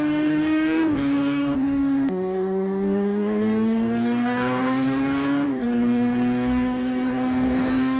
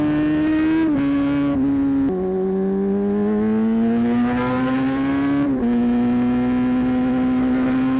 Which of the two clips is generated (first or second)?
first